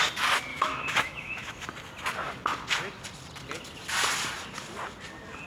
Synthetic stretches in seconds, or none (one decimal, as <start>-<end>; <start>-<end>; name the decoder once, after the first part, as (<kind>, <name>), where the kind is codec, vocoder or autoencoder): 0.5-1.6 (autoencoder, DAC-VAE)